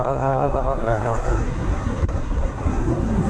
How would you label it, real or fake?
fake